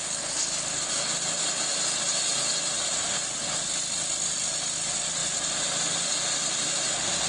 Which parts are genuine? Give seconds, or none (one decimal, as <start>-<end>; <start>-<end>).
0.0-7.3